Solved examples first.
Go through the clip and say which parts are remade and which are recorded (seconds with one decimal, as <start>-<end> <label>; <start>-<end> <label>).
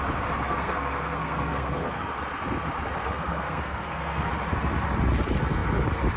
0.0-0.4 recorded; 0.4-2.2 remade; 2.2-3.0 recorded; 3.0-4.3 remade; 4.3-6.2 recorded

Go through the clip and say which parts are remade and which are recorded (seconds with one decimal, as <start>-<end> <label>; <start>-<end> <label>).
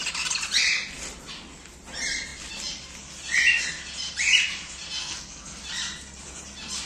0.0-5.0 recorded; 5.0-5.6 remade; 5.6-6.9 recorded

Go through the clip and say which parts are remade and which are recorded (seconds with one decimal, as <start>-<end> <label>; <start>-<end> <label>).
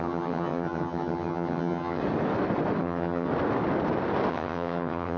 0.0-2.0 remade; 2.0-2.8 recorded; 2.8-3.3 remade; 3.3-4.3 recorded; 4.3-5.2 remade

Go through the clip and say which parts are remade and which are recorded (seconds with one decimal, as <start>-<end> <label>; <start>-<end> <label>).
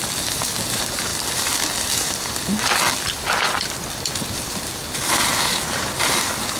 0.0-6.6 remade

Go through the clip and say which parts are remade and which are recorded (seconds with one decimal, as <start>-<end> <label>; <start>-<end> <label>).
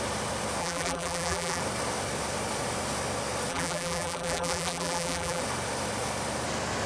0.0-0.6 recorded; 0.6-1.6 remade; 1.6-3.5 recorded; 3.5-5.4 remade; 5.4-6.9 recorded